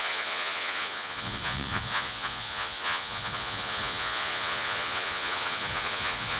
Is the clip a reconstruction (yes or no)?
yes